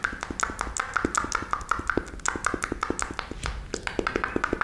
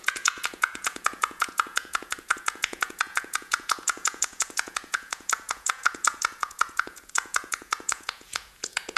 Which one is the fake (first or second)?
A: second